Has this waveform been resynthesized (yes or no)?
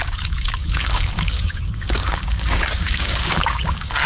yes